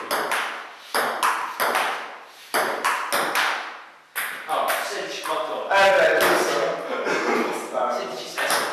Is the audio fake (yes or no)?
no